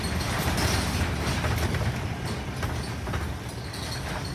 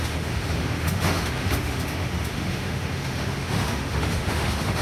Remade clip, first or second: second